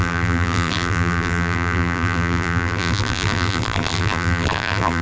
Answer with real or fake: fake